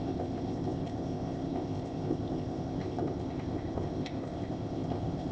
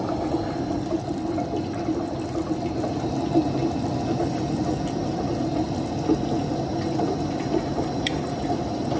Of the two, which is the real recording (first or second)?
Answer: second